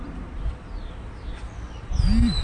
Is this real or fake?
real